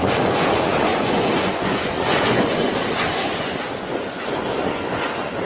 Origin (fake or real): fake